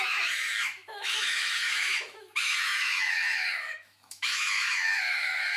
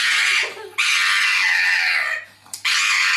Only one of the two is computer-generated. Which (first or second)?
first